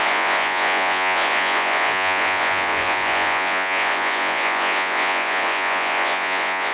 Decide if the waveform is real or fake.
fake